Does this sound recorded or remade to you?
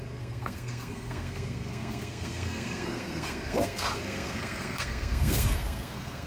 remade